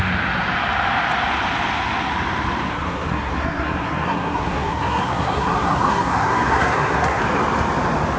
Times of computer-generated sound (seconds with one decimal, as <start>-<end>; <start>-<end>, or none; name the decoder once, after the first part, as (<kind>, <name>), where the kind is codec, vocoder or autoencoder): 2.7-7.2 (codec, SNAC)